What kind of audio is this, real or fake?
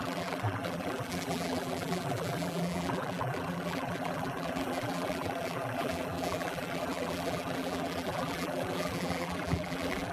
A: fake